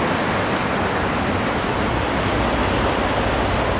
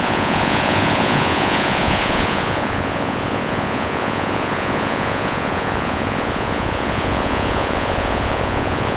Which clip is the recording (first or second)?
first